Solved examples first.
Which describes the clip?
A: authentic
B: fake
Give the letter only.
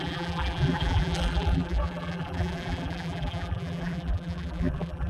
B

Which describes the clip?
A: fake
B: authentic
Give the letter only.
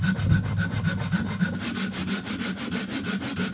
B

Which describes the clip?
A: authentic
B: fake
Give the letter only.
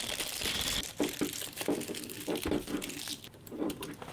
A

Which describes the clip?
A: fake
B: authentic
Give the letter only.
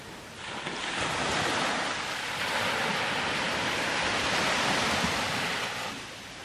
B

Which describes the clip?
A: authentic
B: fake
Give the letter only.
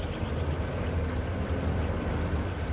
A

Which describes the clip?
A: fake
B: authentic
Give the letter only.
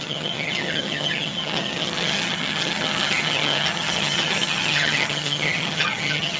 A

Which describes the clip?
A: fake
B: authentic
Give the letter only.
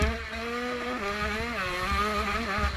B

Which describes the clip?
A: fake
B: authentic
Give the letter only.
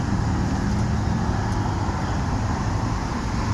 B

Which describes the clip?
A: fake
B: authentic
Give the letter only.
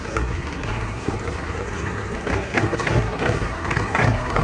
A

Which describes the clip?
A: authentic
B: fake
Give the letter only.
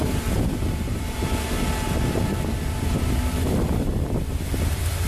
B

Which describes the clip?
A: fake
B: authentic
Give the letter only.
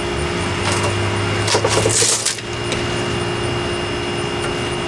B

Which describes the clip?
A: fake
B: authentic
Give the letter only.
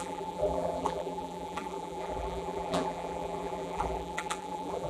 A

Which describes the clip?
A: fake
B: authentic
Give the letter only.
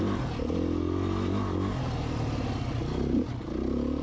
B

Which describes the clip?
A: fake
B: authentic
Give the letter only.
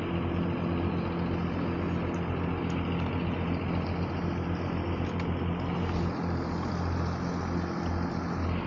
B